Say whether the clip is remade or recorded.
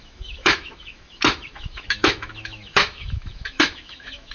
remade